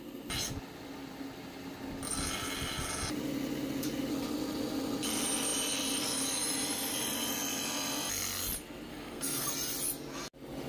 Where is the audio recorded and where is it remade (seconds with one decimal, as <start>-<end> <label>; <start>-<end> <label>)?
0.0-8.9 recorded; 8.9-9.5 remade; 9.5-10.7 recorded